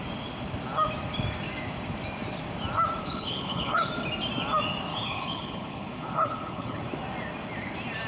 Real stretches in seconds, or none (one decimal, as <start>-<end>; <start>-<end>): 0.0-3.0; 3.9-4.9; 6.8-8.1